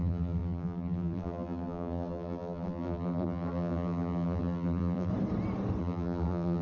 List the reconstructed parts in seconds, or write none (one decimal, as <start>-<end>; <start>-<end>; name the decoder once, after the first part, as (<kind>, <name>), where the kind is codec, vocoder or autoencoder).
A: 0.0-5.1 (vocoder, BigVGAN v2); 5.8-6.6